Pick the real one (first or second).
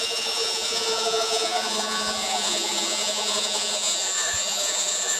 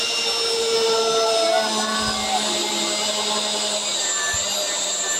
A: second